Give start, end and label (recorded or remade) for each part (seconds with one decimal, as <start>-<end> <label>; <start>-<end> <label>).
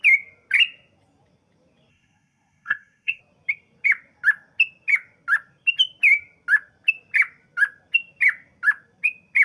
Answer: 0.0-1.9 recorded; 1.9-3.2 remade; 3.2-9.4 recorded